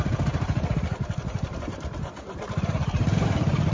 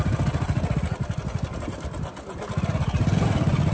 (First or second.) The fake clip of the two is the first